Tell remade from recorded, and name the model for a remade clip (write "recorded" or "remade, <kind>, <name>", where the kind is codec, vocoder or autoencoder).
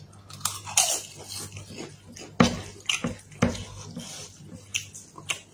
recorded